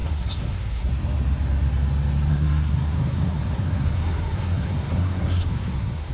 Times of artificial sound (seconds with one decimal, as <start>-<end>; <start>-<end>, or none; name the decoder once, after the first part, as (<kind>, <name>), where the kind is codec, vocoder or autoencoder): 0.0-0.9 (codec, SNAC); 2.3-6.1